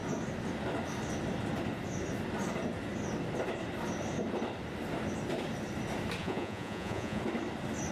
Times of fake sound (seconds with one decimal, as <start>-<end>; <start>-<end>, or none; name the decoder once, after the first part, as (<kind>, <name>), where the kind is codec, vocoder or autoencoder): 6.2-7.2 (vocoder, Vocos)